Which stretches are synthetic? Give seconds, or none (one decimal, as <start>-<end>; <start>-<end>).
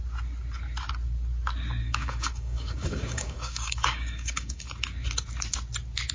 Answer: 1.8-4.7